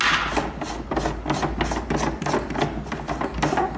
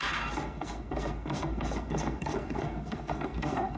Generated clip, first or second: second